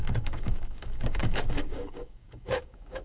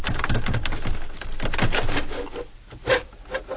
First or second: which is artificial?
first